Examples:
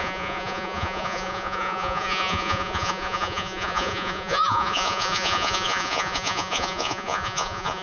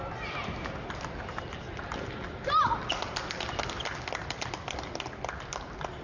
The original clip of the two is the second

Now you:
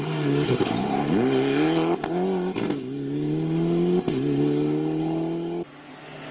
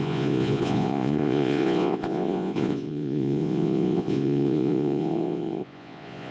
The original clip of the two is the first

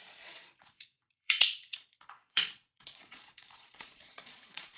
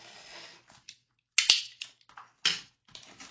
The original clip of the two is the second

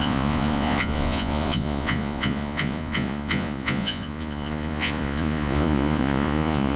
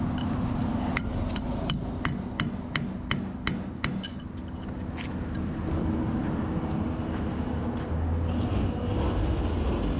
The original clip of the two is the second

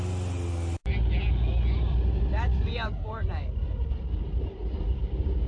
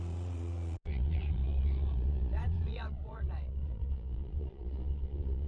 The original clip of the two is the first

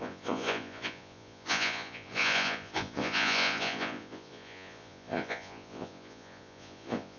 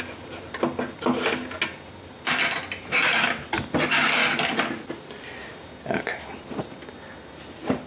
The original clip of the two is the second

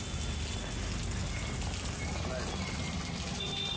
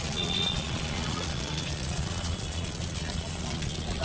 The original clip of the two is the first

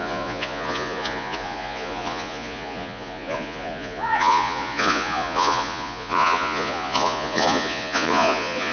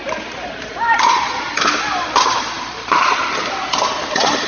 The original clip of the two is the second